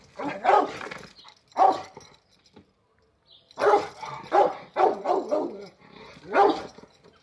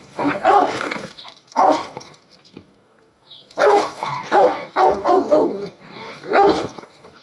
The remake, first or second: second